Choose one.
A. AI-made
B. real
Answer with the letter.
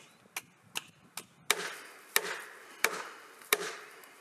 B